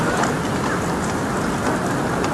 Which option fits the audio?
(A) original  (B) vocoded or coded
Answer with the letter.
A